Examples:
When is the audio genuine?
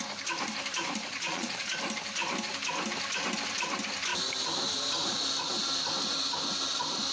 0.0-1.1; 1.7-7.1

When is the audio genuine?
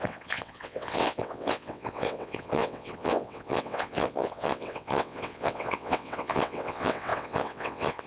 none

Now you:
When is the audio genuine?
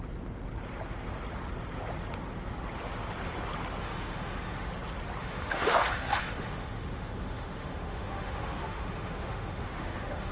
0.0-3.8; 4.7-5.2